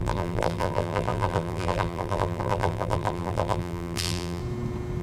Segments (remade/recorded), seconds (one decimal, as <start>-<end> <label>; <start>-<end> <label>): 0.0-4.4 remade; 4.4-5.0 recorded